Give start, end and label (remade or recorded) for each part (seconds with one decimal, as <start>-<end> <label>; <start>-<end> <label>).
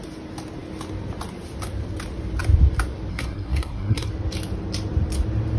0.0-3.1 recorded; 3.1-4.1 remade; 4.1-5.6 recorded